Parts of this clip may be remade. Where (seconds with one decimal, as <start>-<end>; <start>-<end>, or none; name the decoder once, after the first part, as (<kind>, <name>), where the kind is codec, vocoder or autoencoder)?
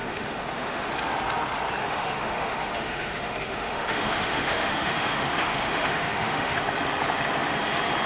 0.0-0.9 (autoencoder, DAC-VAE); 1.8-6.6